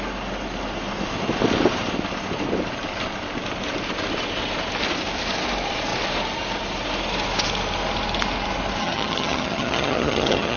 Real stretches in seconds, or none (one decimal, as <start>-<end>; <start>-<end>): 0.0-8.8